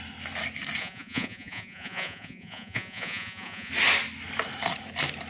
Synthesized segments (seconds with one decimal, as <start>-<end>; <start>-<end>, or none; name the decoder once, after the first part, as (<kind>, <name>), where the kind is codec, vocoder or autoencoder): 0.8-3.7 (vocoder, Vocos)

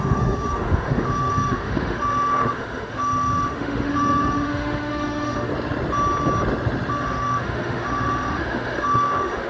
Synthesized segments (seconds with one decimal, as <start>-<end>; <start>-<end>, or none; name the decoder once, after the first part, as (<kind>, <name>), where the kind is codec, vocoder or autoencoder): 0.0-5.5 (autoencoder, DAC-VAE); 6.9-9.5

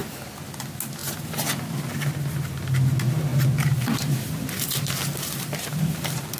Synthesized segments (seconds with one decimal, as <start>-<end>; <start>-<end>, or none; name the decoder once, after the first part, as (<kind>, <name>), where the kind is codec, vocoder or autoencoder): none

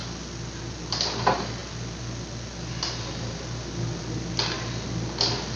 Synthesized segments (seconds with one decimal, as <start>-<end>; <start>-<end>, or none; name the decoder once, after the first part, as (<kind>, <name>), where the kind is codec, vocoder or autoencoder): none

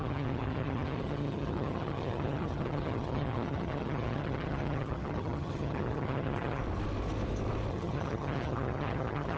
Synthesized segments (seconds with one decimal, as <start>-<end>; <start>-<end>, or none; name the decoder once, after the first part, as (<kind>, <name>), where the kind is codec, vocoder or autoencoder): 0.0-6.6 (vocoder, HiFi-GAN); 7.7-9.4

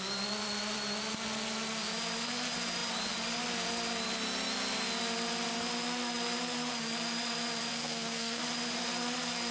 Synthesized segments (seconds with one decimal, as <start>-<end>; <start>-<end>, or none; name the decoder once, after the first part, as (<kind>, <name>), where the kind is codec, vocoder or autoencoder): 7.7-8.4 (codec, SNAC)

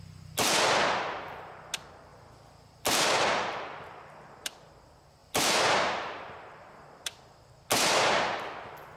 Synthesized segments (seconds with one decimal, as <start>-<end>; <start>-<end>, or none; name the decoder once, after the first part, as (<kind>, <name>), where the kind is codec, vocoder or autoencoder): 2.1-4.7 (vocoder, BigVGAN v2); 5.2-7.5

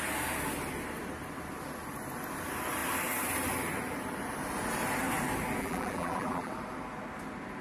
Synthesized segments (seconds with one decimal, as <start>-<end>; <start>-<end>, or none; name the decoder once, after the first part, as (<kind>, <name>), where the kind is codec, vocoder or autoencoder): 5.6-6.5 (vocoder, BigVGAN v2)